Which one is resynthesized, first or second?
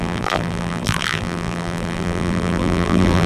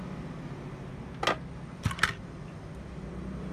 first